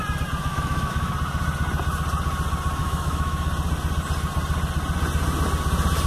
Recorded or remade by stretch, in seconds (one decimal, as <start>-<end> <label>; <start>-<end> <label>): 0.0-0.4 recorded; 0.4-1.1 remade; 1.1-2.8 recorded; 2.8-3.5 remade; 3.5-6.1 recorded